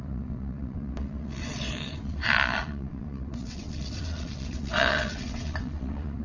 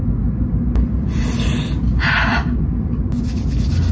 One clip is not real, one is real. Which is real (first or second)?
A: second